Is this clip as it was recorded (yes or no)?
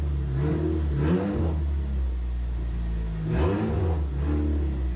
yes